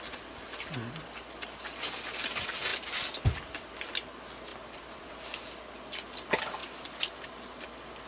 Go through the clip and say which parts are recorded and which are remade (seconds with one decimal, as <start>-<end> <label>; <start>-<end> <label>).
0.0-4.5 recorded; 4.5-5.1 remade; 5.1-8.1 recorded